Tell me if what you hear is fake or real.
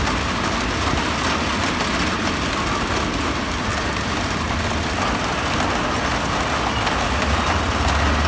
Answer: real